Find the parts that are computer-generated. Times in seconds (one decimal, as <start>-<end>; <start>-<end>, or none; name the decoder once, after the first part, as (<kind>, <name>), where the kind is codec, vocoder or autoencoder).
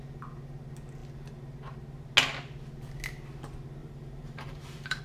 3.8-5.0 (vocoder, BigVGAN v2)